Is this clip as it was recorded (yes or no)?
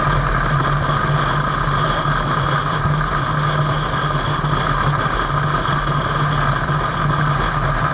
yes